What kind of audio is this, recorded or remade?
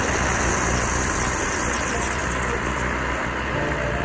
recorded